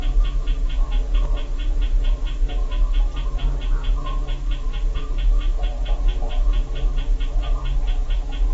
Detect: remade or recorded recorded